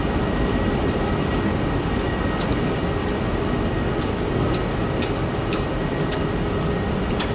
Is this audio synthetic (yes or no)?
no